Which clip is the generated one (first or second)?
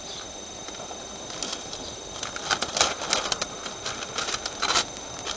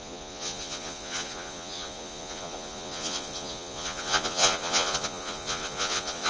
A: second